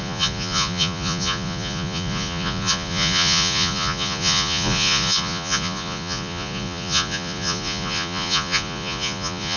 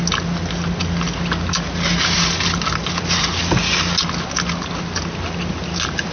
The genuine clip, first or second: second